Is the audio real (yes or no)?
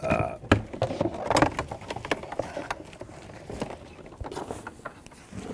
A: yes